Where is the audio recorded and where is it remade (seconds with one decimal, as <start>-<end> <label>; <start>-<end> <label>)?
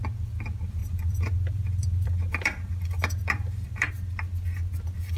0.0-0.8 recorded; 0.8-3.9 remade; 3.9-5.2 recorded